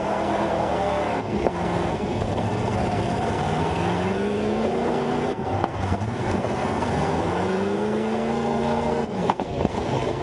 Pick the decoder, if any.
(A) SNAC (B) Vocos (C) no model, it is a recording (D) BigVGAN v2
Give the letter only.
A